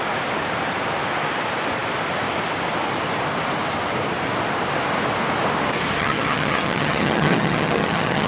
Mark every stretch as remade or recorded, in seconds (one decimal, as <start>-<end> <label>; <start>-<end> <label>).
0.0-6.0 recorded; 6.0-8.3 remade